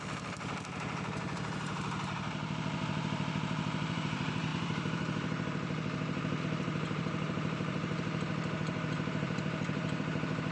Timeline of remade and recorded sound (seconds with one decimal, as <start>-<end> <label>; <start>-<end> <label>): 0.0-10.5 remade